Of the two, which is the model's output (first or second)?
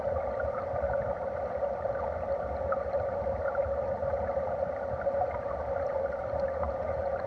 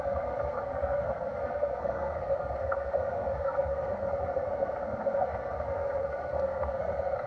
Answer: second